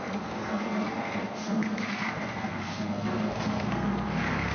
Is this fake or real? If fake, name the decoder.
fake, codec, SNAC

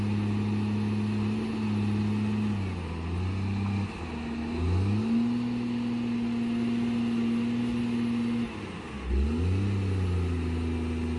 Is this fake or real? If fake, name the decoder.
real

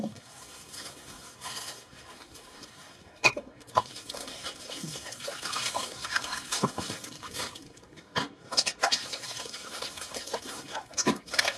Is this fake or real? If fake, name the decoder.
fake, codec, SNAC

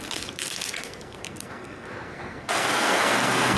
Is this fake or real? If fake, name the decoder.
fake, codec, SNAC